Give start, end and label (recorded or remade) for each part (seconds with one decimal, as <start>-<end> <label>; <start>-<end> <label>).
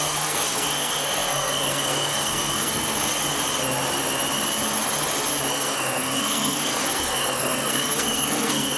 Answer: 0.0-3.1 remade; 3.1-5.5 recorded; 5.5-8.8 remade